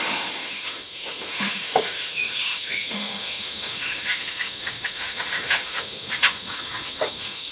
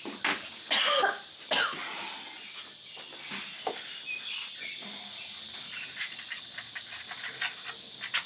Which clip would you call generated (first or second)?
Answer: first